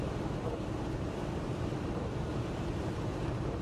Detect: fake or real fake